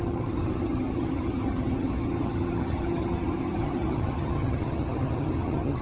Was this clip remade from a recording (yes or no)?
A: yes